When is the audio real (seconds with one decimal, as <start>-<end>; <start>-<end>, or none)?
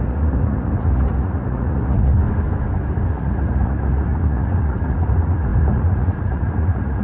2.1-3.1